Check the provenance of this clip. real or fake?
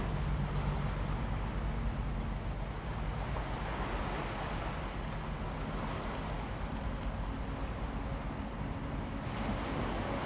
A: real